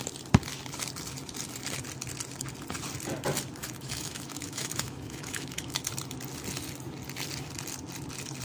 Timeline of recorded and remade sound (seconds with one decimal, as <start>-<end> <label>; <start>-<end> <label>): 0.0-3.6 recorded; 3.6-5.8 remade; 5.8-8.4 recorded